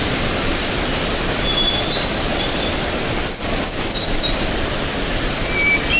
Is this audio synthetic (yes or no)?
no